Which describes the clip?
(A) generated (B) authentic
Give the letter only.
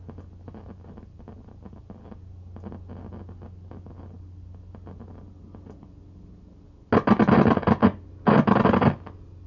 B